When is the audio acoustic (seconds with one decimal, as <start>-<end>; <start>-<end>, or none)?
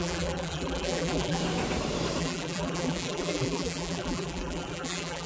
1.4-2.2